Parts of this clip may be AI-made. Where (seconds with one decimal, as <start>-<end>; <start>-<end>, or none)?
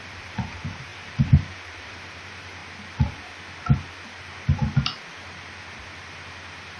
0.0-2.6